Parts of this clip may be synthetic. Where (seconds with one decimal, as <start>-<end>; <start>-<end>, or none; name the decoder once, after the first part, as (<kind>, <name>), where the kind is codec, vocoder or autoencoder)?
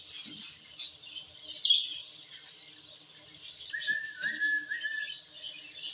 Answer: none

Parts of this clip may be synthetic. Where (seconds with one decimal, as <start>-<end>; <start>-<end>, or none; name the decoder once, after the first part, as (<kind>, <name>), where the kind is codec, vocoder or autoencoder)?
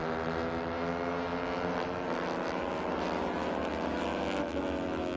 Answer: none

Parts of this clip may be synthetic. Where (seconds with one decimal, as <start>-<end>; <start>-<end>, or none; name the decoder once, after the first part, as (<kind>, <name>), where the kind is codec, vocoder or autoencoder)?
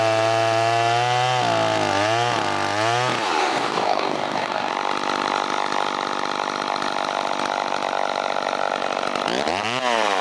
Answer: 3.4-4.7 (codec, DAC)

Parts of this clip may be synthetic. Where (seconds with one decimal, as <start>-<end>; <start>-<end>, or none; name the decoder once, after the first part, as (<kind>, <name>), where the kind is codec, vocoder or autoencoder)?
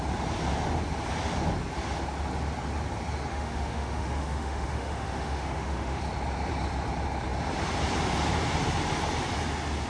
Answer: 3.3-6.0 (autoencoder, DAC-VAE)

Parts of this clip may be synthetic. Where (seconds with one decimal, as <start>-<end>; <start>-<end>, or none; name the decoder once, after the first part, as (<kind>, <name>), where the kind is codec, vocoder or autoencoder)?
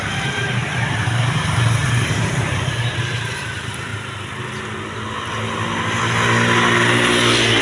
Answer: 0.0-3.9 (vocoder, BigVGAN v2)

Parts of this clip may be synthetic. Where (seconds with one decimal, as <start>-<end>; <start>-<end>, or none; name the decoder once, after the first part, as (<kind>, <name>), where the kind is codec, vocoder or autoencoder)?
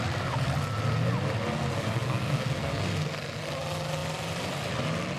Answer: 1.8-3.4 (codec, SNAC)